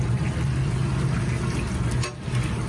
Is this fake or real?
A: real